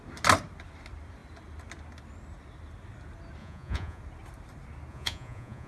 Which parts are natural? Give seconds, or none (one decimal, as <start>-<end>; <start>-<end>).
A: 0.0-3.4; 4.0-4.9